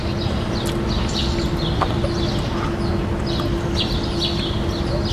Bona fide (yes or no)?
yes